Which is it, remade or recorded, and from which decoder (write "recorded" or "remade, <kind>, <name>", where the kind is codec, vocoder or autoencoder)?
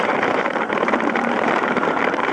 remade, vocoder, BigVGAN v2